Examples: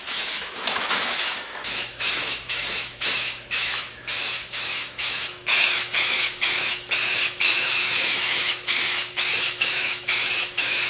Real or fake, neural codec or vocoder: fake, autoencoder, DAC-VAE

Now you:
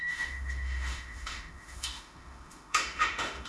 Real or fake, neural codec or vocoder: fake, autoencoder, DAC-VAE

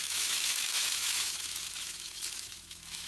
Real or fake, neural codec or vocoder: fake, autoencoder, DAC-VAE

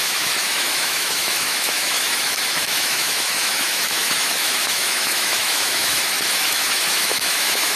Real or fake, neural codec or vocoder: fake, autoencoder, DAC-VAE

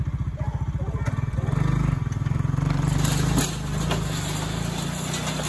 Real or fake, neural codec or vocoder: real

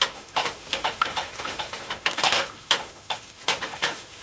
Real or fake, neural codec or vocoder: fake, autoencoder, DAC-VAE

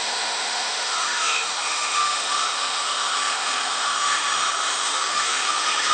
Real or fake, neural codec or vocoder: fake, autoencoder, DAC-VAE